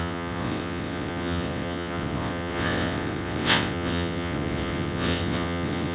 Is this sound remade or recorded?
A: remade